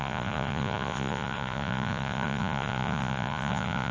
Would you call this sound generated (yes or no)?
yes